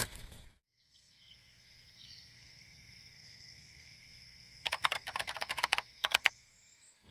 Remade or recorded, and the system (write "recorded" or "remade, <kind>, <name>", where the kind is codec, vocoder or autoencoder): remade, codec, SNAC